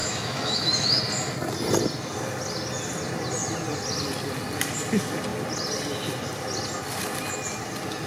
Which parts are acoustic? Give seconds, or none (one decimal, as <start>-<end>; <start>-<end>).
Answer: 1.0-8.1